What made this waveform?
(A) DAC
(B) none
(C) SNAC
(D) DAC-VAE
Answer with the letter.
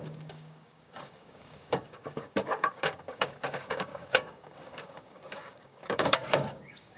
A